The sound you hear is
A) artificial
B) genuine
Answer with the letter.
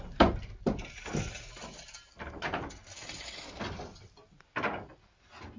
B